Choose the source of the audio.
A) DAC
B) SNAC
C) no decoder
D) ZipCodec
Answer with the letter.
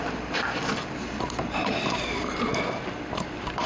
C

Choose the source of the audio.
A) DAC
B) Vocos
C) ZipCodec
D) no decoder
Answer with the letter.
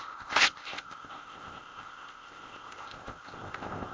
C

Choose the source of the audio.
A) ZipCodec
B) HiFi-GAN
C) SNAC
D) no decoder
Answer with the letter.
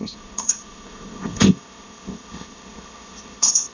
A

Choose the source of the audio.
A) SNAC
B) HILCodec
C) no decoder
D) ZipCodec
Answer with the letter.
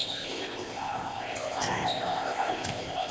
D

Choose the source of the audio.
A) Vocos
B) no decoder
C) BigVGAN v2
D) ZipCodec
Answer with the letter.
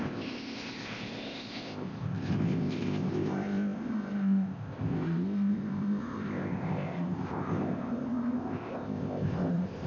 D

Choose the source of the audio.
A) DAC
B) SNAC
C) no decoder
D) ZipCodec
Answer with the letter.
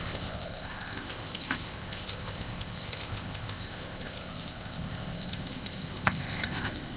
D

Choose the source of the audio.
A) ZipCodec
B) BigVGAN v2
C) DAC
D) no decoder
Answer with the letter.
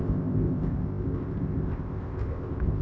A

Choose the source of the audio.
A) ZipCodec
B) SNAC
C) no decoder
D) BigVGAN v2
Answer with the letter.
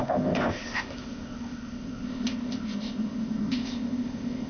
A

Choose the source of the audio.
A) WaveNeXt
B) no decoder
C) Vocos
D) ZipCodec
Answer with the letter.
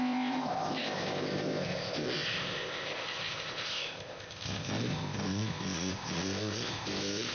D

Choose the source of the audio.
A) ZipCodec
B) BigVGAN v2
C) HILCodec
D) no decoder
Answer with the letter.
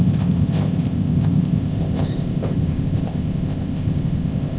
A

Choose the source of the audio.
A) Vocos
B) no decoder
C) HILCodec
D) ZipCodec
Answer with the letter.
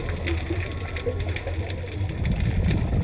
B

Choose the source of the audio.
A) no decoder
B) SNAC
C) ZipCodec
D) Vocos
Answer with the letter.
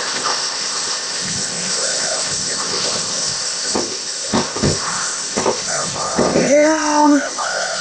C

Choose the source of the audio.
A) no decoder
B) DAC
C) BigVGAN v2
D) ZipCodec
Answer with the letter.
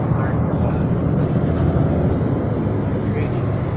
A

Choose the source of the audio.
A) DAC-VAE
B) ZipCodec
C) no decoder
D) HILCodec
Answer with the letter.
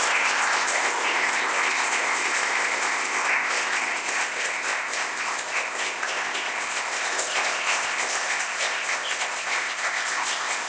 B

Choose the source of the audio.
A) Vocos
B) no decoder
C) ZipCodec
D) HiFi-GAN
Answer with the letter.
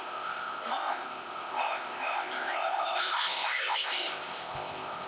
C